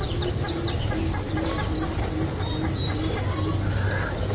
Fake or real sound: real